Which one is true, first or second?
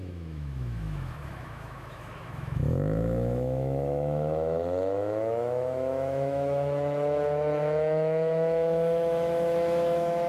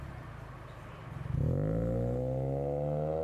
second